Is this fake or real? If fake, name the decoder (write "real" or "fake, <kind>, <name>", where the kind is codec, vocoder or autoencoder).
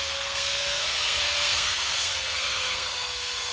fake, codec, SNAC